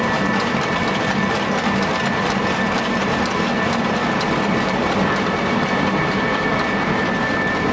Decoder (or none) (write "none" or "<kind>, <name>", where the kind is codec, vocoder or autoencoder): vocoder, BigVGAN v2